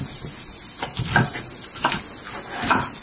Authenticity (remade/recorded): recorded